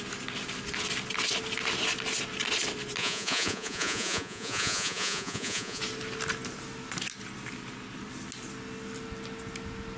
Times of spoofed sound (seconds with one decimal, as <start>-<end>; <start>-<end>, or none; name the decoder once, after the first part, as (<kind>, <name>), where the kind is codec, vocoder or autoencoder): 3.0-5.8 (vocoder, Vocos)